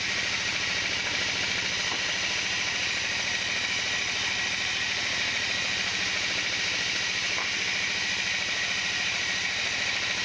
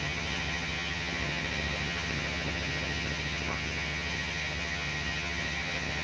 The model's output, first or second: second